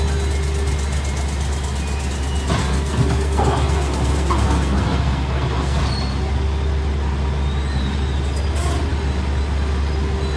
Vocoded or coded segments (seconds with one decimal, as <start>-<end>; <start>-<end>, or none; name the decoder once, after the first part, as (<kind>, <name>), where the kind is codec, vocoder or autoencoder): 2.6-5.8 (codec, SNAC)